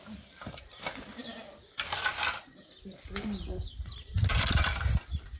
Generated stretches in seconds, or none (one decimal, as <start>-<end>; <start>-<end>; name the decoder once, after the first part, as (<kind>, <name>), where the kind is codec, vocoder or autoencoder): 0.0-2.1 (vocoder, BigVGAN v2); 4.1-5.4